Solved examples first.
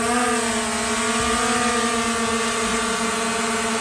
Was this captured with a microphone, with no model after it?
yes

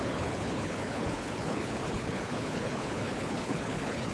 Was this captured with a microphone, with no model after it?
no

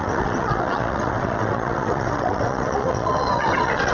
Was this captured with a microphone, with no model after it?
no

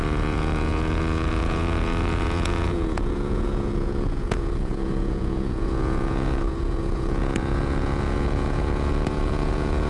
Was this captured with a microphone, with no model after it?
no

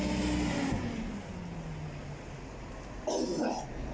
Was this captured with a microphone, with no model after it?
yes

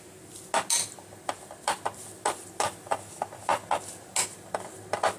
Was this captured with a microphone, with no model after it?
yes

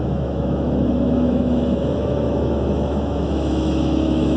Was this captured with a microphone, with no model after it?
no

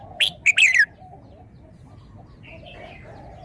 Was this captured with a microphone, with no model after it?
yes